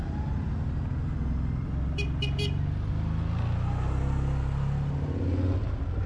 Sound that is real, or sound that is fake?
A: real